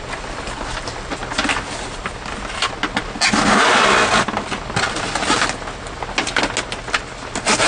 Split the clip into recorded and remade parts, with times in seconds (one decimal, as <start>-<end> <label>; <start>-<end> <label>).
0.0-7.7 recorded